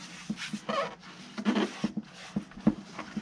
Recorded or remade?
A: recorded